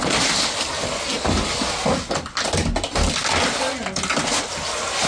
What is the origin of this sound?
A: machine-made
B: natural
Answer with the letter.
B